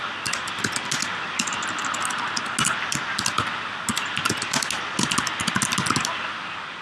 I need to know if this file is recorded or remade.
recorded